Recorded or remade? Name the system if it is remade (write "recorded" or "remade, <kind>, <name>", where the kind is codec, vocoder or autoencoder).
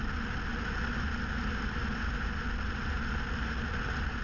recorded